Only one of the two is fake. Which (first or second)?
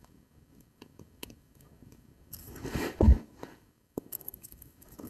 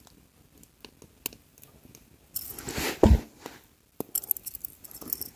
first